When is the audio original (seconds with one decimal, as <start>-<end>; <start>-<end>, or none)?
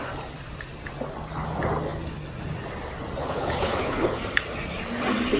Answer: 0.0-3.2; 4.2-5.4